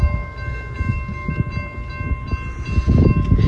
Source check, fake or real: real